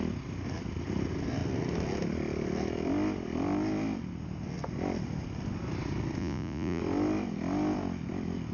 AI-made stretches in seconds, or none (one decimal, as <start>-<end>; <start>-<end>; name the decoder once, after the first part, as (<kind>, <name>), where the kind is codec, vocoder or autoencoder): 6.2-6.8 (vocoder, Vocos)